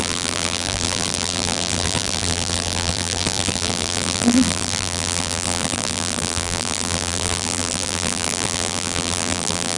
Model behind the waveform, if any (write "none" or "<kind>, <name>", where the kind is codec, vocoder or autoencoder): vocoder, BigVGAN v2